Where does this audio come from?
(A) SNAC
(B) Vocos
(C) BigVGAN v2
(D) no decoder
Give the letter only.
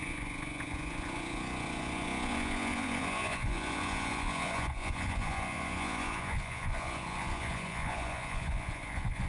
B